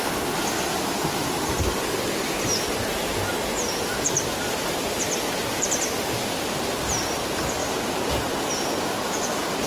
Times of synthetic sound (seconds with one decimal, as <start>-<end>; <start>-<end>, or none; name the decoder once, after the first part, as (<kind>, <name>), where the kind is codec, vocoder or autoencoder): none

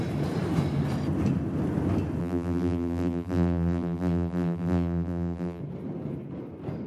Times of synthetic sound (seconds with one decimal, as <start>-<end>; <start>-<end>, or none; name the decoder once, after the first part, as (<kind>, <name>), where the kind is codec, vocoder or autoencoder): 2.2-5.6 (vocoder, BigVGAN v2)

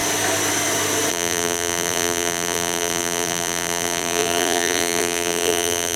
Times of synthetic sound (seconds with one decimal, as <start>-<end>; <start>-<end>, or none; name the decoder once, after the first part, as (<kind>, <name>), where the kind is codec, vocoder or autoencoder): 1.1-6.0 (vocoder, BigVGAN v2)